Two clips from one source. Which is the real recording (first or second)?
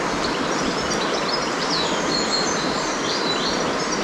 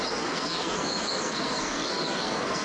first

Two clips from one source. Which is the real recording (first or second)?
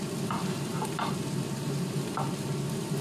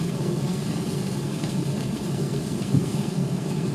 first